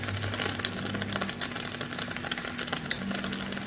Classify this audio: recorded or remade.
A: recorded